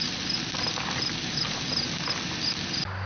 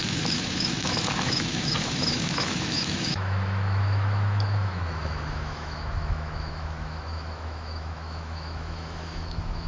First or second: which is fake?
second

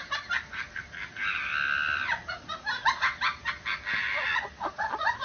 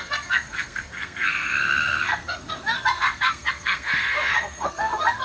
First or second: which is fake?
second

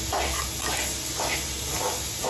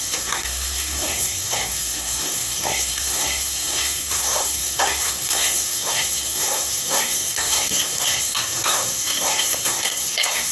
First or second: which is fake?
second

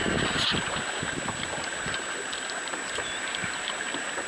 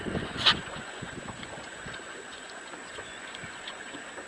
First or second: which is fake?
second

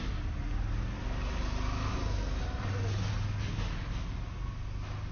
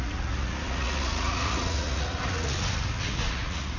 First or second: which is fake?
second